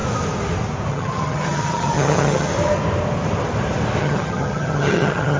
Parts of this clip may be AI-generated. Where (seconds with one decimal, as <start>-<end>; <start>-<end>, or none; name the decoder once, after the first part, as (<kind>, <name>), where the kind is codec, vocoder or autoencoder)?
0.9-2.5 (vocoder, HiFi-GAN); 4.0-5.4